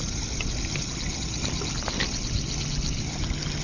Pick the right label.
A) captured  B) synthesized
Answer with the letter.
A